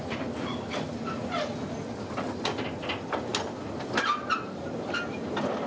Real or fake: real